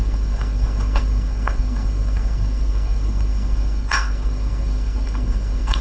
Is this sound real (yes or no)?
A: no